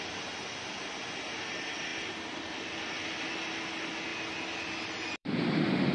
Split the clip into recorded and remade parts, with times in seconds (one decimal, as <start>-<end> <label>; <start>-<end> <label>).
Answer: 0.0-4.1 recorded; 4.1-5.9 remade